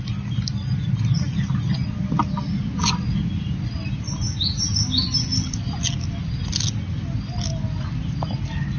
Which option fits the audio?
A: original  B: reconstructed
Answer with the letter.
A